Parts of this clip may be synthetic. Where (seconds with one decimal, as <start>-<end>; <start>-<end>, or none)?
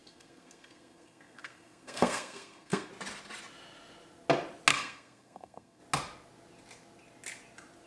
0.0-2.9; 4.7-5.8